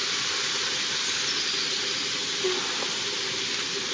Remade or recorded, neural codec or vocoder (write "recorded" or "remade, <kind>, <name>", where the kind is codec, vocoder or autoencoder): recorded